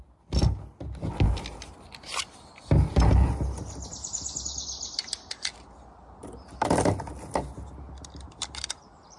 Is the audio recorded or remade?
recorded